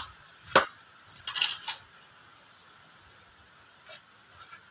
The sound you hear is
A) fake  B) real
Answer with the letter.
B